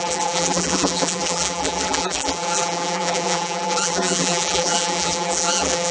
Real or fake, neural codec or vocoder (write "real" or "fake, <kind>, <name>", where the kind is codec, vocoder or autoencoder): fake, vocoder, BigVGAN v2